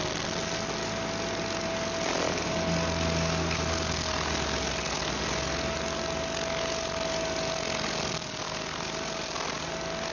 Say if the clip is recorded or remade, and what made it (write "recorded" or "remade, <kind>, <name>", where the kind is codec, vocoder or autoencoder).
recorded